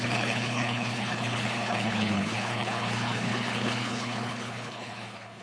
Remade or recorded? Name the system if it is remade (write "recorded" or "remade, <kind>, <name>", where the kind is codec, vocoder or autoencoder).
remade, codec, HILCodec